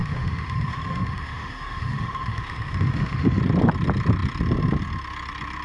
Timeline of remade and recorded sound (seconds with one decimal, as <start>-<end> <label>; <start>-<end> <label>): 0.0-3.4 remade; 3.4-5.6 recorded